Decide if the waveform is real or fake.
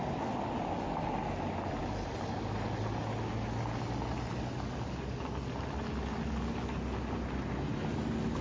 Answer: real